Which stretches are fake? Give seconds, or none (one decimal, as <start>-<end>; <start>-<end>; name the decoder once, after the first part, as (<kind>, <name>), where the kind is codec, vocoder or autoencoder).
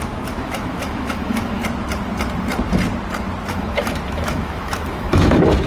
0.0-1.6 (autoencoder, DAC-VAE); 3.5-5.7